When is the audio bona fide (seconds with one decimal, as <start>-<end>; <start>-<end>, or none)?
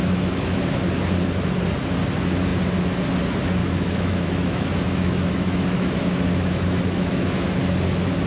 0.6-3.6; 7.4-8.3